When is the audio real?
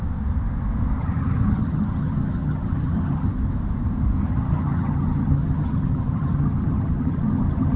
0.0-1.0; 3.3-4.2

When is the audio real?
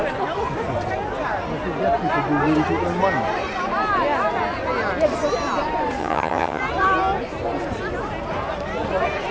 0.0-6.0; 6.6-9.3